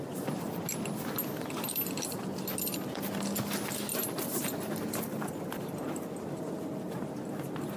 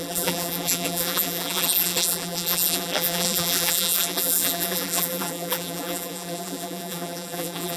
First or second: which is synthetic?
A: second